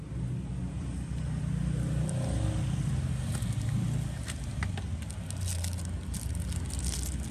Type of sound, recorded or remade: recorded